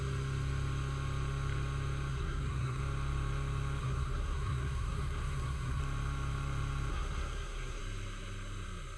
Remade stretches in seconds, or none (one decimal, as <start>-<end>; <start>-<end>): 2.1-2.8; 3.8-5.8; 6.9-7.8